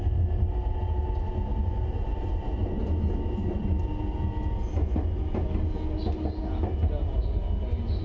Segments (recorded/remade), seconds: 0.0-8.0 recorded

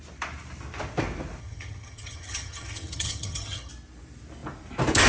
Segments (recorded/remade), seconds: 0.0-1.4 recorded; 1.4-3.7 remade; 3.7-5.1 recorded

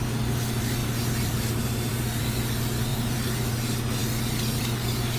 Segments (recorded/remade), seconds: 0.0-0.8 recorded; 0.8-2.2 remade; 2.2-2.9 recorded; 2.9-3.5 remade; 3.5-5.2 recorded

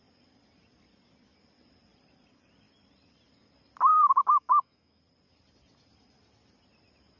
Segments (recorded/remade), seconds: 0.0-3.9 recorded; 3.9-5.0 remade; 5.0-7.2 recorded